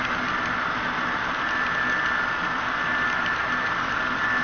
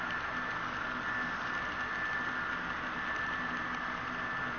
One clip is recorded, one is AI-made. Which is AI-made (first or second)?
first